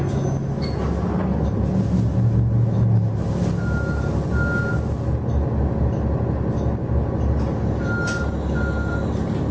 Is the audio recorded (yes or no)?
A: yes